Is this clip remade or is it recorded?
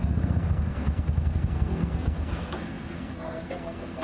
remade